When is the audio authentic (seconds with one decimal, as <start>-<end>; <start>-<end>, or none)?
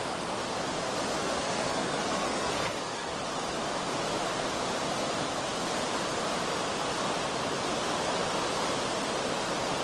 0.0-1.2; 3.1-9.8